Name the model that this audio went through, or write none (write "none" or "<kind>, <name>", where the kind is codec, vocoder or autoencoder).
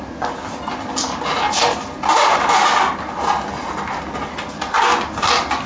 none